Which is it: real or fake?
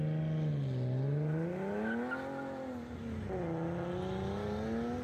real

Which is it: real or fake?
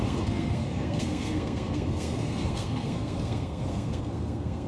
fake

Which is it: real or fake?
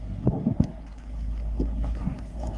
fake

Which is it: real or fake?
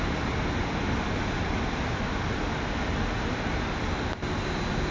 real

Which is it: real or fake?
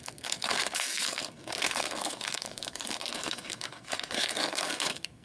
fake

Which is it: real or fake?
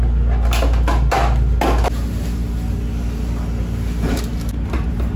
real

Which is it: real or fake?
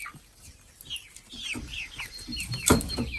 real